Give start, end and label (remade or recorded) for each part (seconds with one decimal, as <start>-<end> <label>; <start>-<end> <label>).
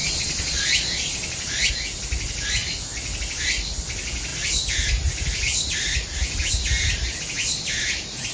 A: 0.0-1.7 remade; 1.7-8.3 recorded